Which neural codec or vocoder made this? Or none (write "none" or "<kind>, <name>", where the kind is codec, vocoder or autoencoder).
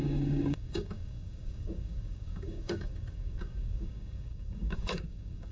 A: codec, DAC